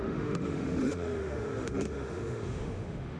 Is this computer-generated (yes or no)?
yes